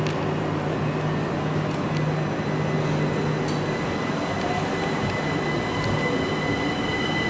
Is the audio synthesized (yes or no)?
no